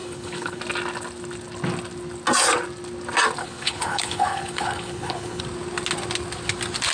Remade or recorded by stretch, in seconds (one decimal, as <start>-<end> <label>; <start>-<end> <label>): 0.0-0.6 remade; 0.6-3.4 recorded; 3.4-5.4 remade; 5.4-6.9 recorded